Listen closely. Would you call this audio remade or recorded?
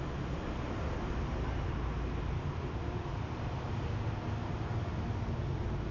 recorded